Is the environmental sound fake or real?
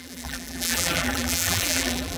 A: fake